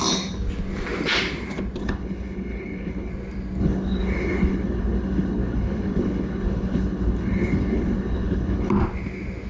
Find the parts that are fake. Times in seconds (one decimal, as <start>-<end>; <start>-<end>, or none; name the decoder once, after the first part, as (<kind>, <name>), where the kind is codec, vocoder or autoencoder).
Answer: 1.8-3.1 (codec, HILCodec); 3.6-8.7

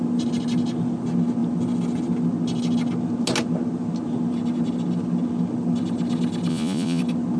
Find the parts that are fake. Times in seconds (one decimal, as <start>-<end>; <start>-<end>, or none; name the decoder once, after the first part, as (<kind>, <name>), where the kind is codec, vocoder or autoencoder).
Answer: 6.5-7.0 (vocoder, Vocos)

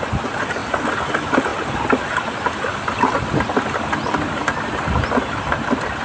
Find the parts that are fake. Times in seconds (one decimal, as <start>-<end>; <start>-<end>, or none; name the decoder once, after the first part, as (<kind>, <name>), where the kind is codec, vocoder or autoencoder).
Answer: none

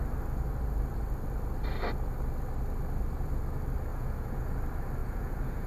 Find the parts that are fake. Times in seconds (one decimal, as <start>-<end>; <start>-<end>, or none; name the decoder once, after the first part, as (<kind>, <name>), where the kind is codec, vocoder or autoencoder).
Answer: 3.9-4.5 (vocoder, Vocos); 5.0-5.7

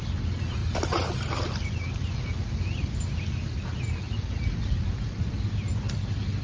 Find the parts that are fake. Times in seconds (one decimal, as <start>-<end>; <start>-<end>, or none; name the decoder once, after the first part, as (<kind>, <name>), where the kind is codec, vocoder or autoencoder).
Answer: none

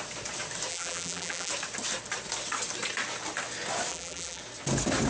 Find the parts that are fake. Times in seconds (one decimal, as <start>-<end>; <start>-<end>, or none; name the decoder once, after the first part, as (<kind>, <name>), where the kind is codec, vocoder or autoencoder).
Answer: 0.7-1.5 (vocoder, BigVGAN v2); 3.9-4.4

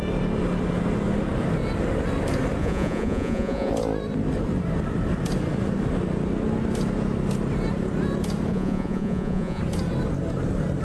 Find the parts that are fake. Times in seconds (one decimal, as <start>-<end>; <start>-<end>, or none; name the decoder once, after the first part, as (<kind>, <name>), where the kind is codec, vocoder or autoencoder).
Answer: 2.6-3.7 (vocoder, Vocos); 8.5-9.6